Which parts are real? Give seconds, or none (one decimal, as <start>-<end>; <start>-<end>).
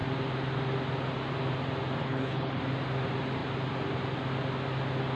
0.0-2.0; 2.6-5.2